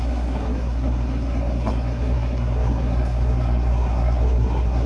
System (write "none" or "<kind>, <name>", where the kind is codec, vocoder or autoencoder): codec, SNAC